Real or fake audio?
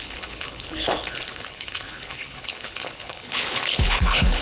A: fake